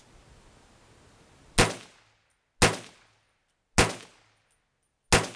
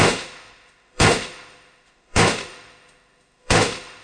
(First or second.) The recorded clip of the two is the first